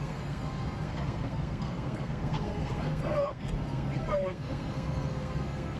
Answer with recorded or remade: remade